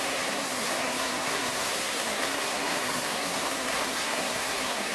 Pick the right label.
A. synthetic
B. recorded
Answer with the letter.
A